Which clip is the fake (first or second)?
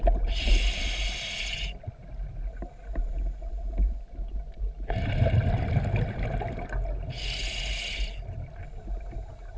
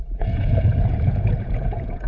second